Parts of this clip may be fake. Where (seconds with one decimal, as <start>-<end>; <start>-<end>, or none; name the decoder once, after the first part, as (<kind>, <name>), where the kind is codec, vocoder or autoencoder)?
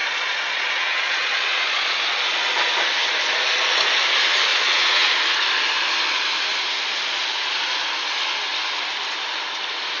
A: 0.0-2.0 (vocoder, Vocos); 4.5-5.2